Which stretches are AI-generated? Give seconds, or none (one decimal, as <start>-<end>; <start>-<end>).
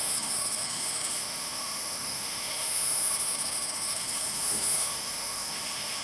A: 0.0-6.0